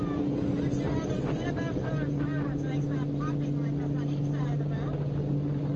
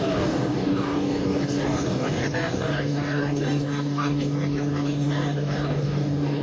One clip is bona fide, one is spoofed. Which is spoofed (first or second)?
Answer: second